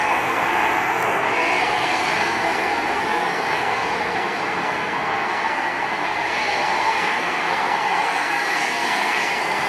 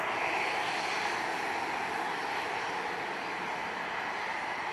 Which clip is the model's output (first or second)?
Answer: first